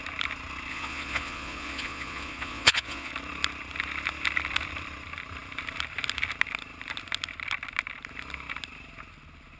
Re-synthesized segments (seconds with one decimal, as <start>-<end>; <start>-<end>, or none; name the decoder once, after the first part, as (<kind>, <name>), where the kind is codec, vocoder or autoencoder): 0.7-3.1 (vocoder, Vocos)